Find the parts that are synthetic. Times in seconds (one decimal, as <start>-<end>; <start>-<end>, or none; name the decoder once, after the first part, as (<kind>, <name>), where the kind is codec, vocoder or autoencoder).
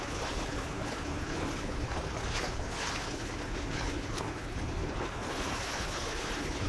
0.0-6.7 (codec, HILCodec)